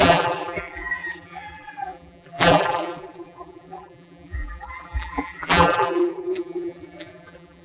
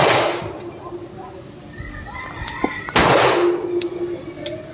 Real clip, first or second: second